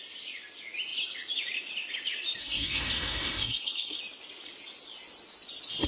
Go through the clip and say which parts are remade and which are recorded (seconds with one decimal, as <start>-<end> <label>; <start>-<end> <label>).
0.0-2.4 recorded; 2.4-4.0 remade; 4.0-5.9 recorded